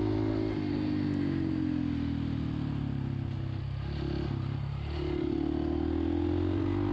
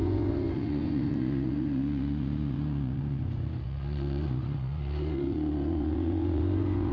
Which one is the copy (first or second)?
second